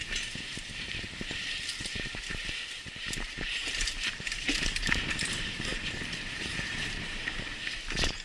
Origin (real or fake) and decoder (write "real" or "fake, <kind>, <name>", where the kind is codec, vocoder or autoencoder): fake, vocoder, BigVGAN v2